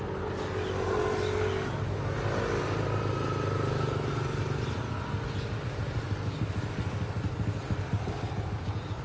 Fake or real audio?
real